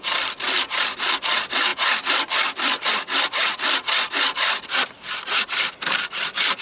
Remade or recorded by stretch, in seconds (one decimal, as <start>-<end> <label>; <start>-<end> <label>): 0.0-6.6 remade